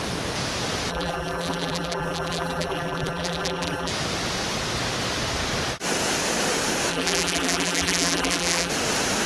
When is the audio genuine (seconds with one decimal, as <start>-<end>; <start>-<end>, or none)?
0.0-0.9; 3.9-6.9; 8.7-9.3